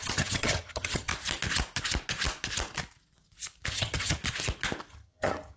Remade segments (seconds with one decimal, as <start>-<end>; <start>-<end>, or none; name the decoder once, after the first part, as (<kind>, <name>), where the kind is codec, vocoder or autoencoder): 0.0-1.1 (vocoder, HiFi-GAN); 3.7-4.2; 4.9-5.6